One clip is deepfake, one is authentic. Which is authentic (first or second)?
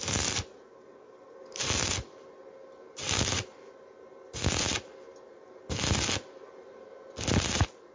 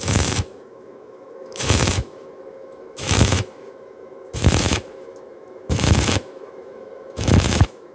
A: first